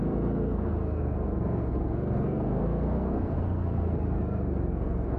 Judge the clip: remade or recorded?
remade